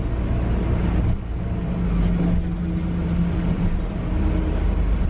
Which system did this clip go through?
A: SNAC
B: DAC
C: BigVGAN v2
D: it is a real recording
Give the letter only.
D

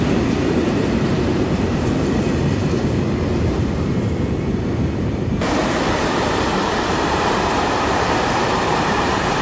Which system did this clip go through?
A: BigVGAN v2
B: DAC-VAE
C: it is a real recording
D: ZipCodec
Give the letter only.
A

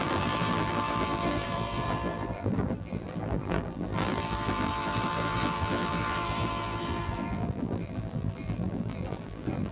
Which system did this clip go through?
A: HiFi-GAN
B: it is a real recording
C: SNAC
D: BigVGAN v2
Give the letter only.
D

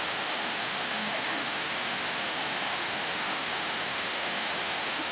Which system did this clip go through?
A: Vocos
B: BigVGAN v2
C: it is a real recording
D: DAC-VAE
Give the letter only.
D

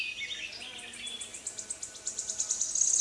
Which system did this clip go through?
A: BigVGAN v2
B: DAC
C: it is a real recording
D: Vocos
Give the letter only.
C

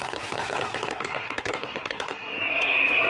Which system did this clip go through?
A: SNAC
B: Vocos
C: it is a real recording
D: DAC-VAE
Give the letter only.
A